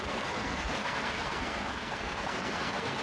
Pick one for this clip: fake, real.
fake